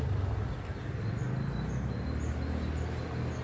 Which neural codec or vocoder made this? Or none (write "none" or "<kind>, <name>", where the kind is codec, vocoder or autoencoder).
none